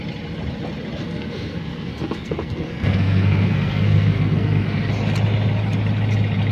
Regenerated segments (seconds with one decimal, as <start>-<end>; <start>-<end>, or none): 1.0-4.9